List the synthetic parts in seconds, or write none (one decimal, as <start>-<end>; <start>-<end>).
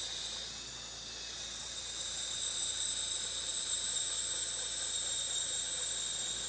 1.6-4.0